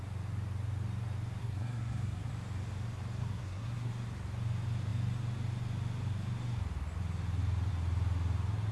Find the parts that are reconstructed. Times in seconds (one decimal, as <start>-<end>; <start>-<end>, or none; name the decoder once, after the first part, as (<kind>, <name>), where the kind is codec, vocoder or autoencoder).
1.4-2.3 (codec, SNAC); 3.2-3.9